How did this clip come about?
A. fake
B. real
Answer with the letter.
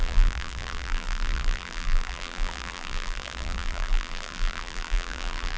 A